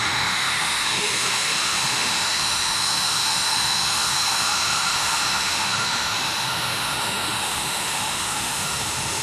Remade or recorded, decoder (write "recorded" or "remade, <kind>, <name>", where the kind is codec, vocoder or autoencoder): remade, autoencoder, DAC-VAE